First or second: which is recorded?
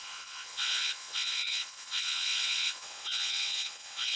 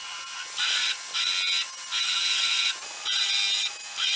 second